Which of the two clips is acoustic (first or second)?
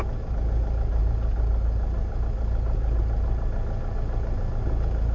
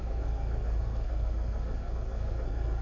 first